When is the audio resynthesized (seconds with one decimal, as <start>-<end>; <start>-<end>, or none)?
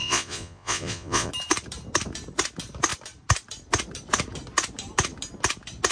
0.0-1.3